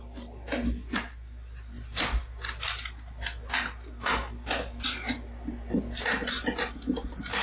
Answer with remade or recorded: recorded